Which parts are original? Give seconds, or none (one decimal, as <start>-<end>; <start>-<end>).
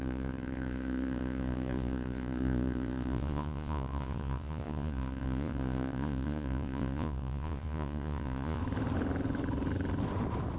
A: 8.6-10.6